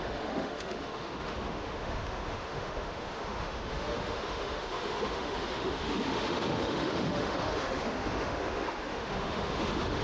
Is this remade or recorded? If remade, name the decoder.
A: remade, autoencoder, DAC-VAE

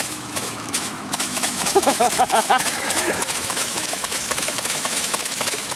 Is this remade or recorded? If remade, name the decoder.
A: remade, autoencoder, DAC-VAE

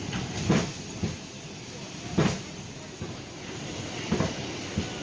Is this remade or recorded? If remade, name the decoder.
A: recorded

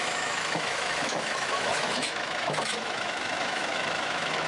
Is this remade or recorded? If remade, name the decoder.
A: remade, autoencoder, DAC-VAE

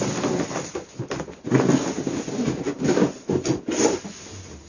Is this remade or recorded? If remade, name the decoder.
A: recorded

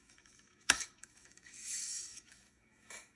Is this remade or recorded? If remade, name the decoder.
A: remade, autoencoder, DAC-VAE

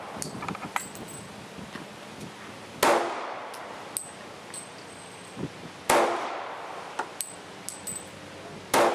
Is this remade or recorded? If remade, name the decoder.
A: recorded